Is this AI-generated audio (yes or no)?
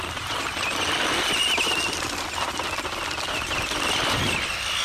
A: no